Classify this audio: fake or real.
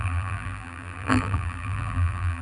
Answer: fake